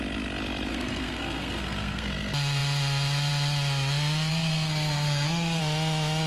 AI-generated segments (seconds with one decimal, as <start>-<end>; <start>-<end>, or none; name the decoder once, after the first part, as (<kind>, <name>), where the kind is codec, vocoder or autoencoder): 0.7-2.1 (codec, SNAC); 4.3-5.6